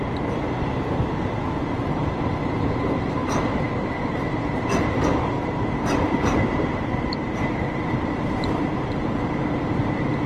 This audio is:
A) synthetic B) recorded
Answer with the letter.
A